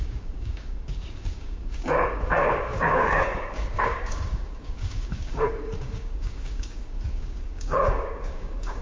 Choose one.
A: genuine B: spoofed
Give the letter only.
B